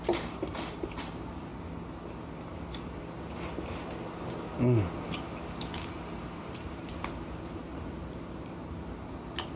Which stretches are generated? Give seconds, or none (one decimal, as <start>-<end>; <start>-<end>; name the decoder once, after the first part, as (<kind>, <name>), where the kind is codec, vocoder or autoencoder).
0.0-1.5 (vocoder, BigVGAN v2); 6.4-9.6